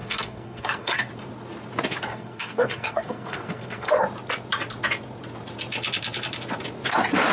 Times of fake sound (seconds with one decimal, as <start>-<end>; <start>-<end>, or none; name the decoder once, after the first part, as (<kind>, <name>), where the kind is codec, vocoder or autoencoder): 0.0-1.1 (codec, SNAC); 2.1-3.9